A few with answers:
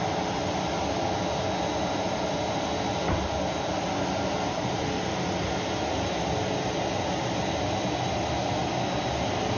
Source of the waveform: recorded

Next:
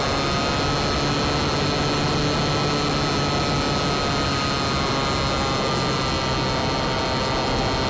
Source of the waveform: recorded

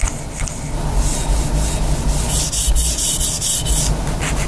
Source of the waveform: recorded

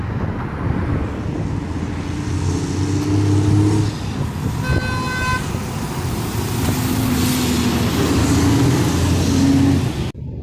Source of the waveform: recorded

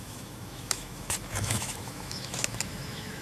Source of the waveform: remade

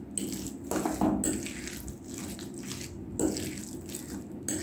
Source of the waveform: recorded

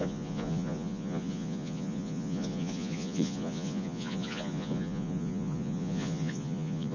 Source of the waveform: remade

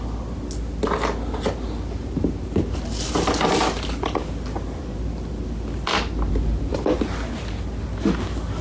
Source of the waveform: recorded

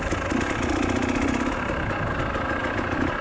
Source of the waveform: recorded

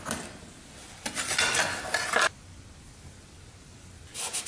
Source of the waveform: recorded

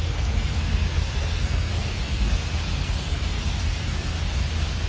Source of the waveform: remade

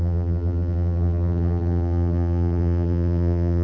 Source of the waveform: remade